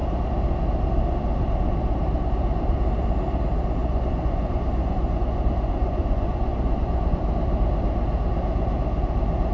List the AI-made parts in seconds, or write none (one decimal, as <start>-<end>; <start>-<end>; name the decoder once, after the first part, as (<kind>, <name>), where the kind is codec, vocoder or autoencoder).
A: 3.8-7.2 (vocoder, Vocos)